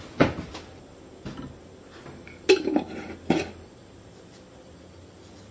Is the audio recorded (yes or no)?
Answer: yes